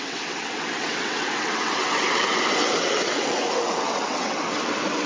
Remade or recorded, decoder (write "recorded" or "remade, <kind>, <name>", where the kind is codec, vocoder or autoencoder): remade, vocoder, WaveNeXt